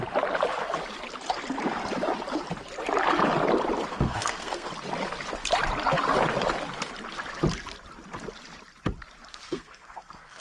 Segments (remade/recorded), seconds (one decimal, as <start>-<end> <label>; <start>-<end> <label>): 0.0-3.9 recorded; 3.9-4.7 remade; 4.7-9.3 recorded; 9.3-10.4 remade